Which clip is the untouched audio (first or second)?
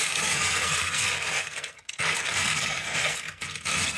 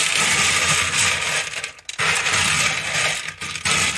second